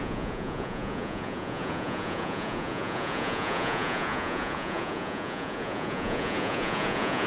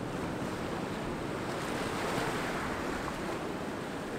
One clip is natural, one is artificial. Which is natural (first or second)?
second